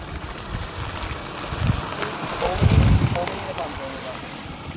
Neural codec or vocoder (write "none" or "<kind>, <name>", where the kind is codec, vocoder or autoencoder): none